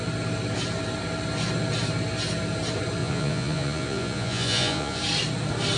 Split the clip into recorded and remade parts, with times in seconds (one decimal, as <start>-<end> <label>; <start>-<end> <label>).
0.0-3.0 recorded; 3.0-5.0 remade; 5.0-5.8 recorded